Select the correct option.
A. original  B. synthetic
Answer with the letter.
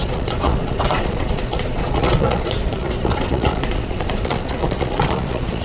B